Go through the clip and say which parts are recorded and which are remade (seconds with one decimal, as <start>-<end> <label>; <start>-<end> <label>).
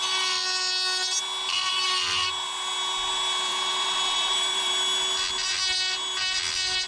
0.0-3.5 recorded; 3.5-4.7 remade; 4.7-6.9 recorded